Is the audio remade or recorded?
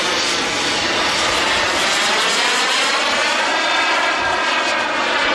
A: recorded